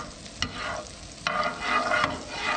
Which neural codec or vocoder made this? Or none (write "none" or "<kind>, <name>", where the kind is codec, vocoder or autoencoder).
none